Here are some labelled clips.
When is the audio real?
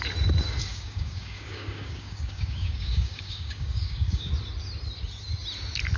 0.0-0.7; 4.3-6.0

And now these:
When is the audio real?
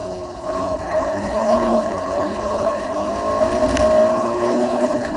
3.1-4.1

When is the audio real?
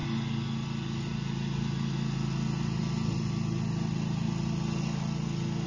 0.0-5.7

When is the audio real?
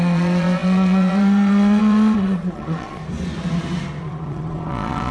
3.0-4.0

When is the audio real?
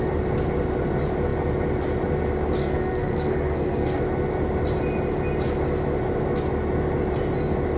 0.0-2.6; 4.0-7.8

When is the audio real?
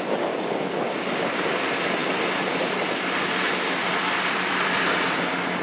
0.0-5.6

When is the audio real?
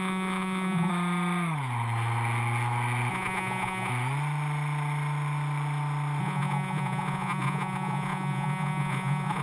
0.9-3.1; 3.9-6.2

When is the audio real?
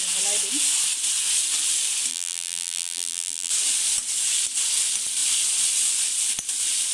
0.0-2.1; 3.5-6.9